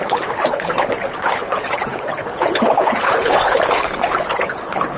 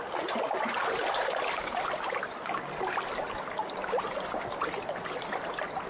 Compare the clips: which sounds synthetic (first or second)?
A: first